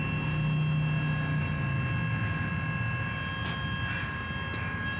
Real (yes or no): yes